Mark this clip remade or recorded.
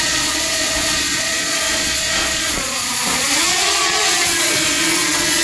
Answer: remade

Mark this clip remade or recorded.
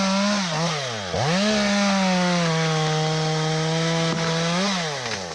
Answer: recorded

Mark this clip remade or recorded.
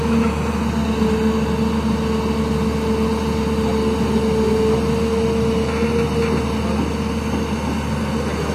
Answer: recorded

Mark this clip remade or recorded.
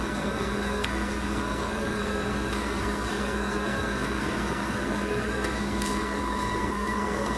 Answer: remade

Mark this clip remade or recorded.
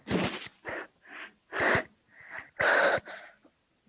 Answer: recorded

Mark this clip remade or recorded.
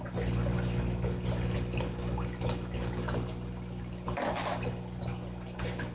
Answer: recorded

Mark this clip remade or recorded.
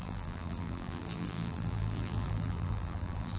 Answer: remade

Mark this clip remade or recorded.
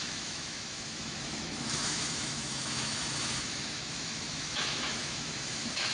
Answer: remade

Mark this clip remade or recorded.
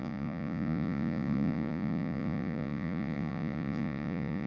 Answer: remade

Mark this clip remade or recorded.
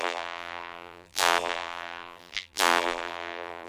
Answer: remade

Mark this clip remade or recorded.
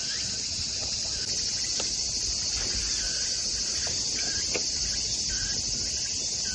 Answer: recorded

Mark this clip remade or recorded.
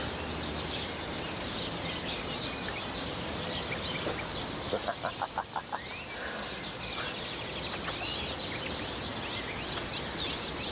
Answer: recorded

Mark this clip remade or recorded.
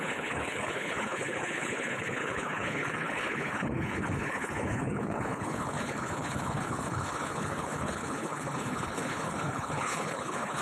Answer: remade